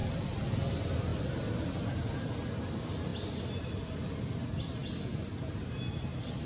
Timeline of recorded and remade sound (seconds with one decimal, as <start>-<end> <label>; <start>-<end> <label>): 0.0-6.5 recorded